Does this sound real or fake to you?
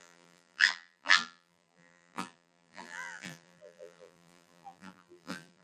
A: fake